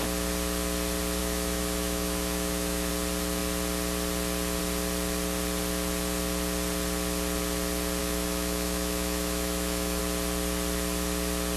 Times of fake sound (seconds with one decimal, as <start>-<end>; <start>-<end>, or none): 1.2-2.9; 8.0-10.0